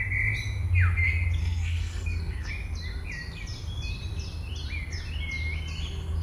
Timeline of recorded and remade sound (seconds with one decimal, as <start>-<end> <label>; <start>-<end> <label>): 0.0-1.4 recorded; 1.4-2.5 remade; 2.5-6.2 recorded

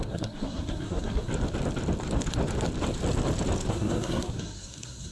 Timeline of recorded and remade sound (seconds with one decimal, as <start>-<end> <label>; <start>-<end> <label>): 0.0-1.3 remade; 1.3-3.7 recorded; 3.7-5.1 remade

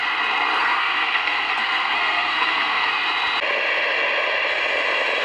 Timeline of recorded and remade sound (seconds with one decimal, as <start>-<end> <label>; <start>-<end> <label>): 0.0-0.6 recorded; 0.6-2.9 remade; 2.9-5.2 recorded